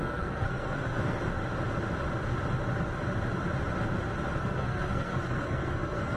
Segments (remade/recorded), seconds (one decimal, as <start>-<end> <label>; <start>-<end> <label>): 0.0-1.2 remade; 1.2-4.4 recorded; 4.4-6.2 remade